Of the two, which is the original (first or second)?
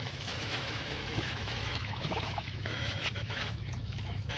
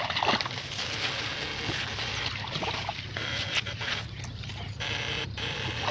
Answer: second